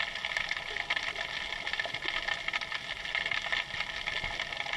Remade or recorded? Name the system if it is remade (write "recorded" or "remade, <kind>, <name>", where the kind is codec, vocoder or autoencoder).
recorded